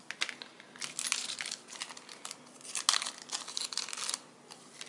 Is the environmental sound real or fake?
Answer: real